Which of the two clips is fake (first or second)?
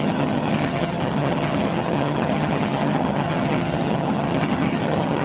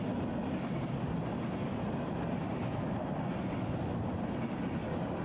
first